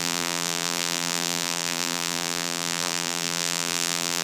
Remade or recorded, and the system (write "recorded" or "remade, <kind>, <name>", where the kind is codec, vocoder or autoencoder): remade, vocoder, BigVGAN v2